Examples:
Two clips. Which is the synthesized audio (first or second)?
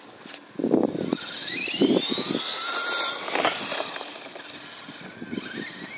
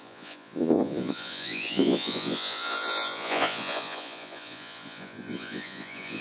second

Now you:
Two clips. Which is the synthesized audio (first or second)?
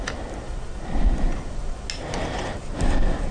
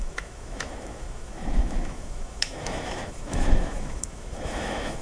second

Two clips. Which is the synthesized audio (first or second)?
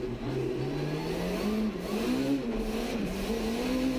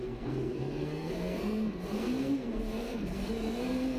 second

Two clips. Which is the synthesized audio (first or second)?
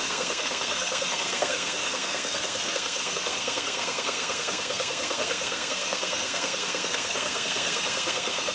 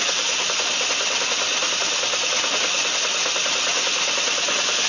first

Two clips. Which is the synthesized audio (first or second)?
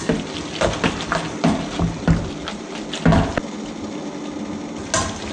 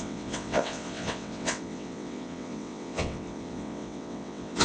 second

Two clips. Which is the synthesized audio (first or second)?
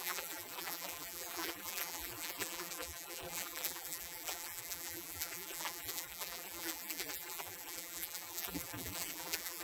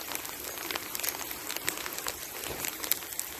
first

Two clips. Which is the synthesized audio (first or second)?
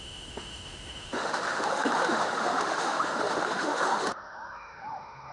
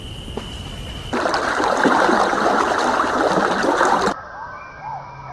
first